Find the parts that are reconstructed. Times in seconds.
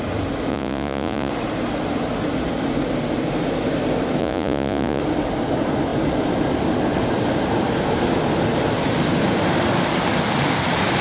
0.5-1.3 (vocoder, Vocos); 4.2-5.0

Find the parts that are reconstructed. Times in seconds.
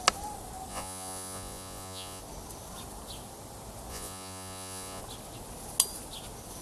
0.7-2.2 (vocoder, Vocos); 3.9-5.0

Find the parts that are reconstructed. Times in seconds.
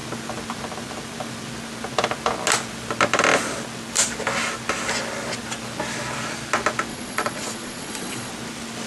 6.9-8.3 (vocoder, Vocos)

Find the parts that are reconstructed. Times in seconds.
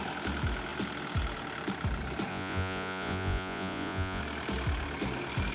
2.3-4.2 (vocoder, Vocos)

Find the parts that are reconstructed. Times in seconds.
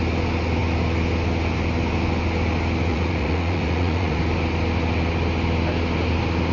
2.9-4.2 (vocoder, Vocos)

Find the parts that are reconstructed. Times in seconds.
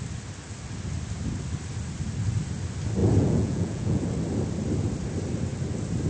3.0-4.0 (vocoder, Vocos)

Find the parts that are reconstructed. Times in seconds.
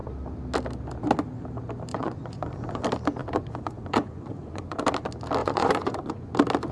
1.9-2.8 (vocoder, Vocos); 3.2-4.8; 5.4-6.3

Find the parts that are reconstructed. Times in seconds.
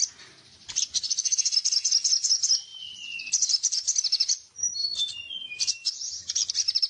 none